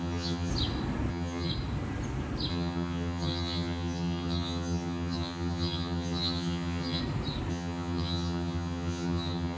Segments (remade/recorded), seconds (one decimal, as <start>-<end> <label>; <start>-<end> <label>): 0.0-0.5 remade; 0.5-1.1 recorded; 1.1-1.5 remade; 1.5-2.5 recorded; 2.5-7.0 remade; 7.0-7.5 recorded; 7.5-9.6 remade

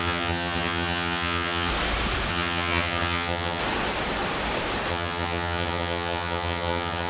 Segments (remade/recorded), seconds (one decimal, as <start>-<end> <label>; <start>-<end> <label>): 0.0-1.7 remade; 1.7-2.3 recorded; 2.3-3.6 remade; 3.6-4.9 recorded; 4.9-7.1 remade

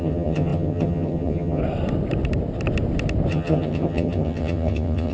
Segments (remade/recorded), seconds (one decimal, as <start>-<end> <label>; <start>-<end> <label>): 0.0-1.6 remade; 1.6-3.3 recorded; 3.3-5.1 remade